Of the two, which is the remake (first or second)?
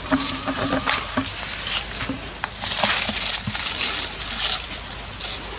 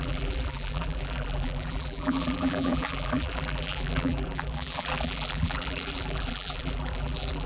second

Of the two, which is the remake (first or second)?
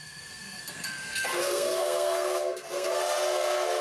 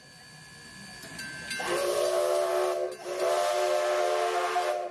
first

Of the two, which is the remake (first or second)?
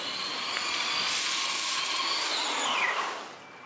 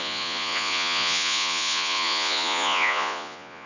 second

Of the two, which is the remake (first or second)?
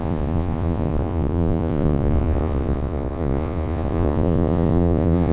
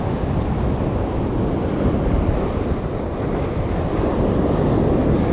first